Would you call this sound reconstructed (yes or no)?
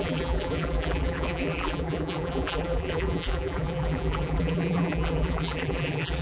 yes